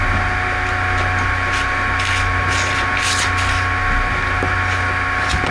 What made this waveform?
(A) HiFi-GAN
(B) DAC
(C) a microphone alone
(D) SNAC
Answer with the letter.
C